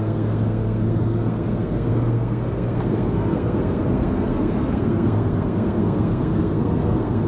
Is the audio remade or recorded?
remade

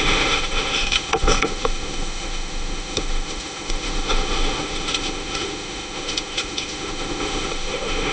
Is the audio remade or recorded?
remade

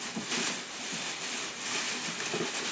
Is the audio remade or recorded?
recorded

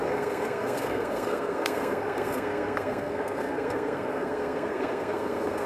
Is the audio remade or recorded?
remade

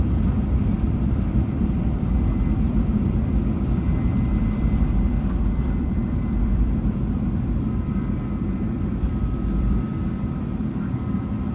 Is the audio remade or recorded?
remade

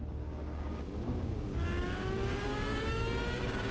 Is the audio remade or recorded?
remade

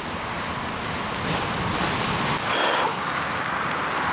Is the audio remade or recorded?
recorded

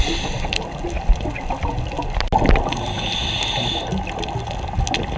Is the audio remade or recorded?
recorded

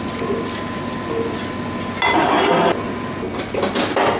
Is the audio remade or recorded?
recorded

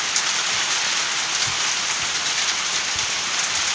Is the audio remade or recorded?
remade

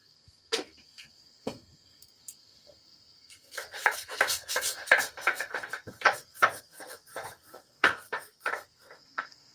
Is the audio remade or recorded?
remade